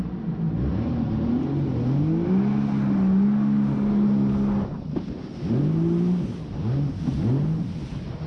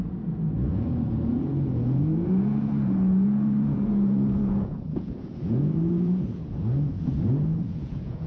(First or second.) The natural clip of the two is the first